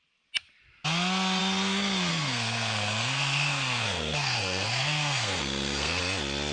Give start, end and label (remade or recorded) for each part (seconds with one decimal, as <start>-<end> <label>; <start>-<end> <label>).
0.0-2.1 recorded; 2.1-6.0 remade; 6.0-6.5 recorded